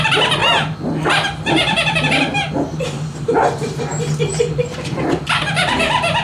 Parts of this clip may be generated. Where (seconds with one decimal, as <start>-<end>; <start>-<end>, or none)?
0.0-0.4; 2.5-3.9; 4.4-6.2